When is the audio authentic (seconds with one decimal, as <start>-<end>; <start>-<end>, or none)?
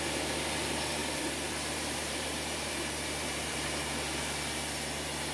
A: 0.0-1.0; 4.2-5.3